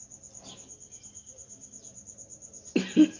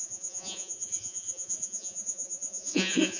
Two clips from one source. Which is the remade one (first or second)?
second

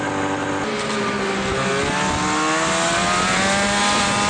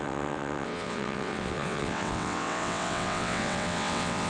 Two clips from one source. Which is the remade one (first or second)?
second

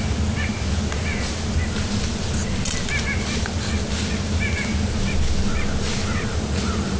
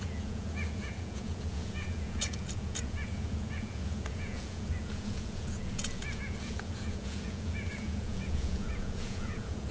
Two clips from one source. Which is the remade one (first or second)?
second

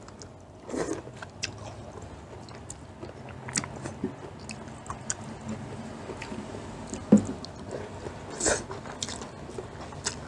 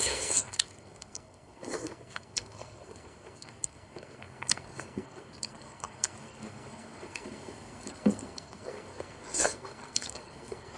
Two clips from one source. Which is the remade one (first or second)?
second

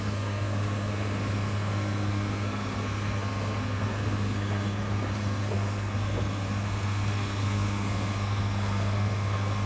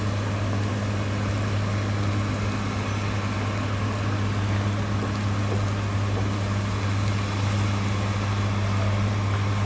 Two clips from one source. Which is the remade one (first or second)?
first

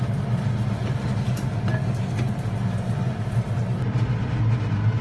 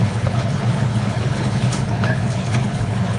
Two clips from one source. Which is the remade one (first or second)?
second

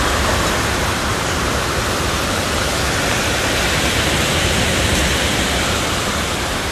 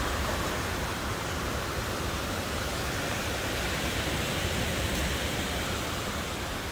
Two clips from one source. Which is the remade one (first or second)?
second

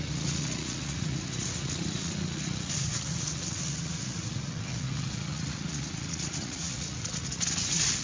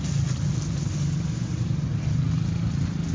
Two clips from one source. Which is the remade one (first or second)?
first